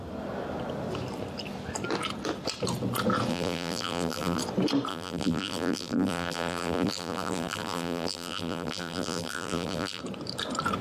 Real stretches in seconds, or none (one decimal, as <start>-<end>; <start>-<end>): 0.0-3.3; 4.4-4.9; 10.0-10.8